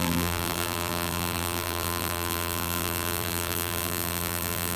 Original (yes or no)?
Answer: no